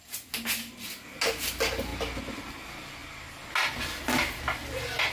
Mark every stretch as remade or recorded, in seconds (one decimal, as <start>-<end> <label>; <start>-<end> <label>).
0.0-5.1 recorded